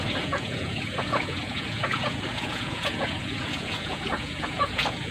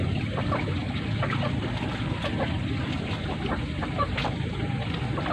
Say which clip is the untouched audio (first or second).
second